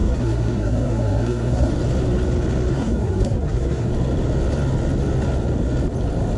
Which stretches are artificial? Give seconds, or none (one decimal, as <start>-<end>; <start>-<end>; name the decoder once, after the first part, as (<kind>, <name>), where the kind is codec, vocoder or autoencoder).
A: 0.0-1.7 (codec, SNAC); 2.7-3.9